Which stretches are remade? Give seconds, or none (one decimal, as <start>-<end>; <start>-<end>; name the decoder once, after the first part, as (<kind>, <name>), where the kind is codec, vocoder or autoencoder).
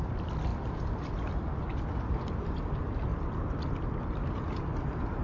none